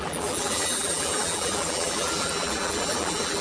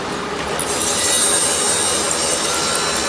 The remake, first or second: first